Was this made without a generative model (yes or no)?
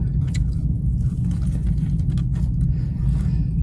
yes